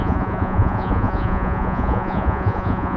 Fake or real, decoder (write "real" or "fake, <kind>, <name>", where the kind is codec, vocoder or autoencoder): fake, vocoder, Vocos